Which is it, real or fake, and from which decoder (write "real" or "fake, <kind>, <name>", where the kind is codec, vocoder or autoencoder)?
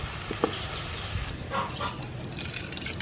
real